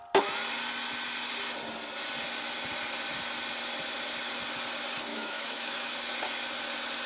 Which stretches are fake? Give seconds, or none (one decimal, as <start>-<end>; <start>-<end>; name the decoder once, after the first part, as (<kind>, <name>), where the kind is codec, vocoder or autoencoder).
5.1-5.9 (autoencoder, DAC-VAE)